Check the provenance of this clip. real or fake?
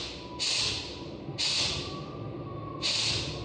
real